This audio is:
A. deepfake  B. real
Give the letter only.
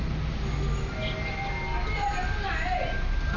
B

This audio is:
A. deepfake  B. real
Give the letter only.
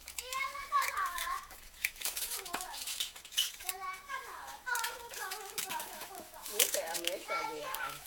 A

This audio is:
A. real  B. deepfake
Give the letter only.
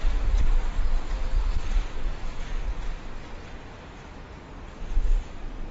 A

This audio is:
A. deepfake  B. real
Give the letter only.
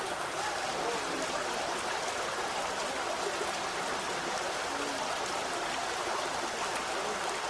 B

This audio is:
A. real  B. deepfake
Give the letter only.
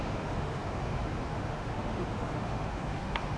B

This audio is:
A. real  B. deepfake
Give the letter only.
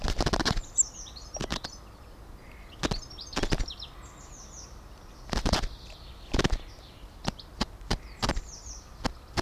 A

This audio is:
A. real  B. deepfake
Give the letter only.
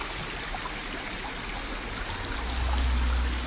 A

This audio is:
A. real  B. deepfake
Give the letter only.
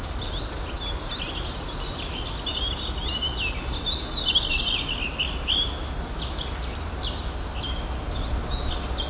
A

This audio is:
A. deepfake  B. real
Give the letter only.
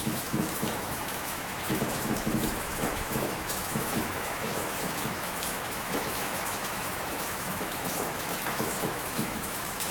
A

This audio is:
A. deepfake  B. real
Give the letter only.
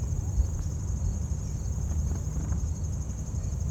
B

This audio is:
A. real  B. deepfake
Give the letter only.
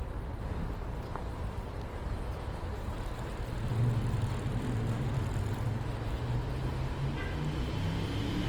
A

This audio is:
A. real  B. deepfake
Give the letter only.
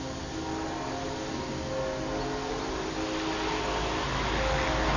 A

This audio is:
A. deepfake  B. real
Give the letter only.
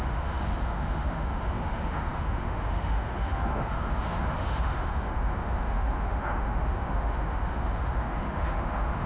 A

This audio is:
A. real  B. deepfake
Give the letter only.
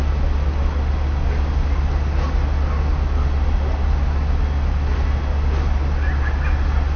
A